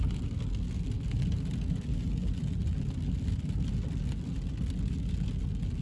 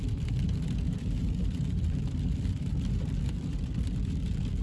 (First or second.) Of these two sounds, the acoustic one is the first